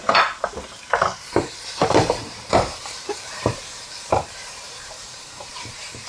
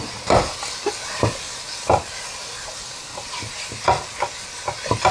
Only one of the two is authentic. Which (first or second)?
second